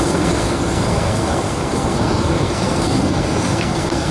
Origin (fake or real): fake